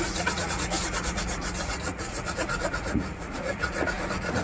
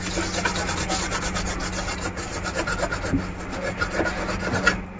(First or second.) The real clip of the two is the second